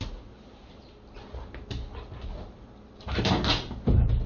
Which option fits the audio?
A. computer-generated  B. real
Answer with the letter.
B